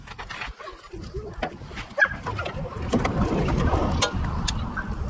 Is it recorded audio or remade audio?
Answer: recorded